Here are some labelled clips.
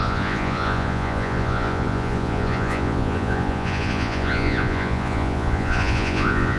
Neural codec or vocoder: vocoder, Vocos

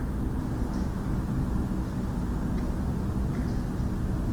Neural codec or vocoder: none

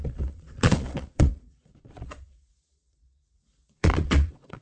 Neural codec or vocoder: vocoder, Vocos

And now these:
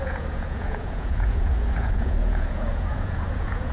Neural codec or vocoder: vocoder, Vocos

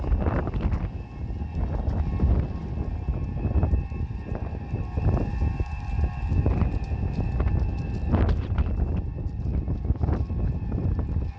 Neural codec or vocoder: none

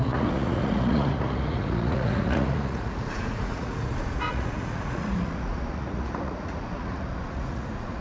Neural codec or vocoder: vocoder, Vocos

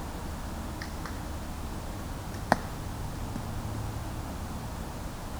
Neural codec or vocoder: none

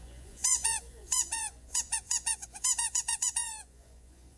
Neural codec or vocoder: vocoder, Vocos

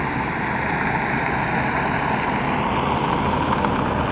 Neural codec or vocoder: none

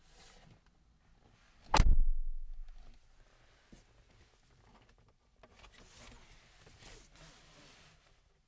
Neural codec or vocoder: none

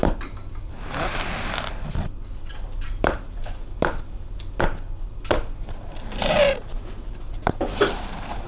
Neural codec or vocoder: none